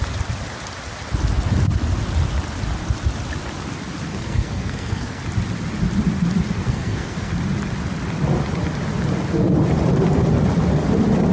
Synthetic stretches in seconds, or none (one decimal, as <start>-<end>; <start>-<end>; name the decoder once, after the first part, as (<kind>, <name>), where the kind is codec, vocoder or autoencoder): 4.1-5.2 (codec, SNAC); 6.6-7.3